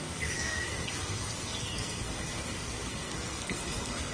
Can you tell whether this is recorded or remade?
remade